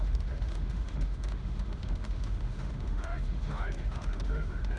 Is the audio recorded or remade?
remade